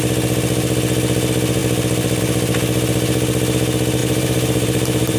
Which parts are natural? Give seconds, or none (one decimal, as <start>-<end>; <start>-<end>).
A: 0.0-4.0